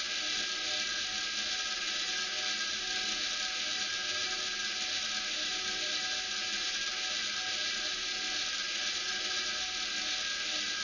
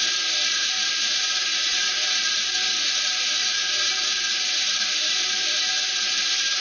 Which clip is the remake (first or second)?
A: second